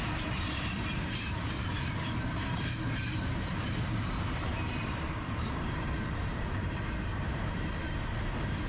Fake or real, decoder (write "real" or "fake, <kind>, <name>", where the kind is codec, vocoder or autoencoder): fake, vocoder, BigVGAN v2